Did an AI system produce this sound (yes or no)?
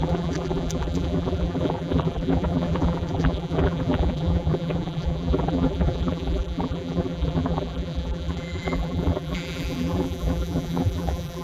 yes